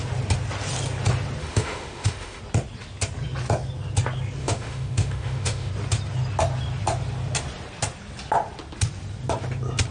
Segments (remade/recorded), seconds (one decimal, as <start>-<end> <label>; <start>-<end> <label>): 0.0-1.4 recorded; 1.4-2.4 remade; 2.4-4.4 recorded; 4.4-5.7 remade; 5.7-9.9 recorded